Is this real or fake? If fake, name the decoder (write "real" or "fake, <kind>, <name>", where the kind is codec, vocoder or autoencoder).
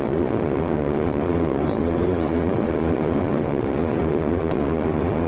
fake, vocoder, Vocos